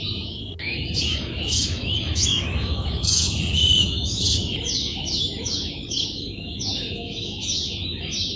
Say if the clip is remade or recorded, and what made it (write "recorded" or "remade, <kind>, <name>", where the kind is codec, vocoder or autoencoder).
remade, autoencoder, DAC-VAE